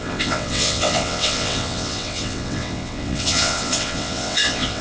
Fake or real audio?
fake